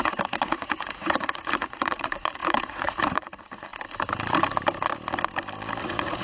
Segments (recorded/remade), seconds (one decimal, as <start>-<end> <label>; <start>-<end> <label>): 0.0-3.7 remade; 3.7-5.8 recorded; 5.8-6.2 remade